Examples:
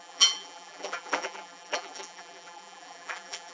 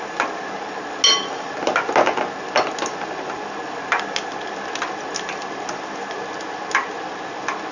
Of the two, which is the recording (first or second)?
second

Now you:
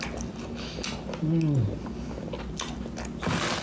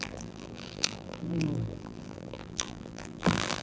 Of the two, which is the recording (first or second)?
first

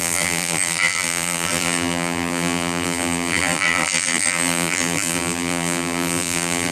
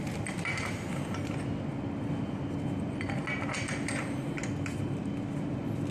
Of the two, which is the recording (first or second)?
second